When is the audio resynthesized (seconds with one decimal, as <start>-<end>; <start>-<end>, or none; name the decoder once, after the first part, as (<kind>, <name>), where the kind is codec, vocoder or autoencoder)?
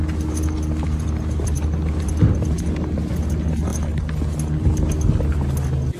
none